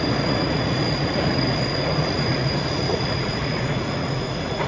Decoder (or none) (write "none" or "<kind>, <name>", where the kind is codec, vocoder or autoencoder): vocoder, Vocos